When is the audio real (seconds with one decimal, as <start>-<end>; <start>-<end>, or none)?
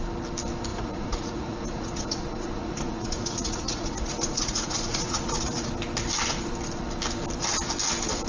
0.0-0.7; 5.7-8.3